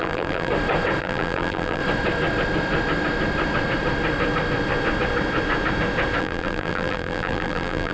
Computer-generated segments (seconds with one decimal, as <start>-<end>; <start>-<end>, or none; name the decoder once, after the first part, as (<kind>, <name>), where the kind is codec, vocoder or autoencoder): 0.0-0.5 (vocoder, BigVGAN v2); 1.0-1.8; 6.2-7.9